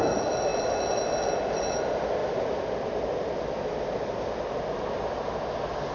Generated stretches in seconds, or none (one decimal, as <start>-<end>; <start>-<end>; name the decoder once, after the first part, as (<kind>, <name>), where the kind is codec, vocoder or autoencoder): none